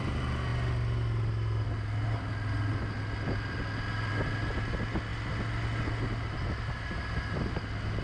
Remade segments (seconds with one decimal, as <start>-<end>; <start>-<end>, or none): none